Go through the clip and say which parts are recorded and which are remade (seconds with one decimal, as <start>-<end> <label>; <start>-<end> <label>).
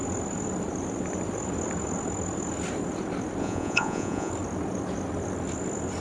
0.0-3.4 recorded; 3.4-4.3 remade; 4.3-6.0 recorded